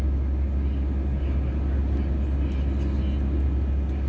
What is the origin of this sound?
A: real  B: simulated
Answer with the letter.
A